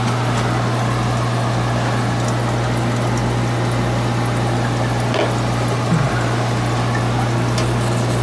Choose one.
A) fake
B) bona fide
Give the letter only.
B